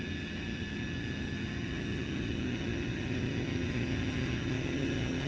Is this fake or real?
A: fake